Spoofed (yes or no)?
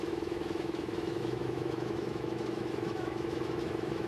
yes